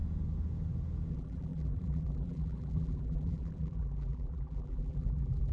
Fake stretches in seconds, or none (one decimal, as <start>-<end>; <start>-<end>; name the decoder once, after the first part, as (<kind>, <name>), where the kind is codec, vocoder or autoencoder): 1.1-5.5 (vocoder, BigVGAN v2)